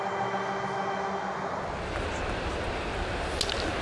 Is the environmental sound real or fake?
real